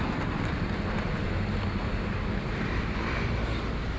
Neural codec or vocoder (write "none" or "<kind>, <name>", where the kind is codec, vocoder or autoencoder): none